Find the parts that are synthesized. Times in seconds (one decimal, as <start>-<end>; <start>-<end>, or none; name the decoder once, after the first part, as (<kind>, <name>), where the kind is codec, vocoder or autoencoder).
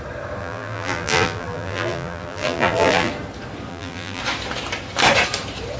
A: 0.4-3.1 (vocoder, BigVGAN v2); 3.7-4.2